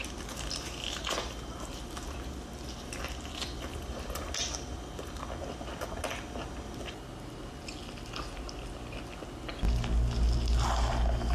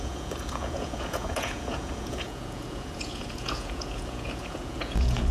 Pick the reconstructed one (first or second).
second